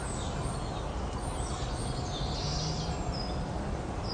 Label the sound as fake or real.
real